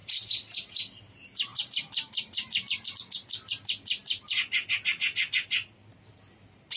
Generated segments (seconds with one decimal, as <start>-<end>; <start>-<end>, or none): 0.0-1.0; 1.5-2.5